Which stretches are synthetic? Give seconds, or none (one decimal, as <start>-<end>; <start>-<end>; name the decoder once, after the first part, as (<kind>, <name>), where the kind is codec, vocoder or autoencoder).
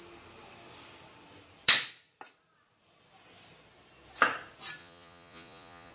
4.8-5.9 (vocoder, Vocos)